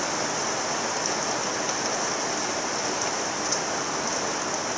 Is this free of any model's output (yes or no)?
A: yes